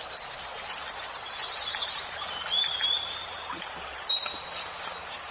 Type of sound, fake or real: real